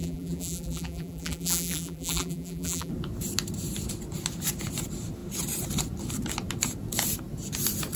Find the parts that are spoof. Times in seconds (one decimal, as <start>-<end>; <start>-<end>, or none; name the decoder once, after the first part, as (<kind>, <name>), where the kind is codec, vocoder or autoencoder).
0.0-2.9 (vocoder, BigVGAN v2)